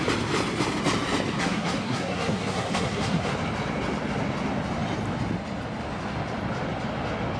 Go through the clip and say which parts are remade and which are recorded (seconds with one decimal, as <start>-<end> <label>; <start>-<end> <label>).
0.0-1.4 recorded; 1.4-3.3 remade; 3.3-7.4 recorded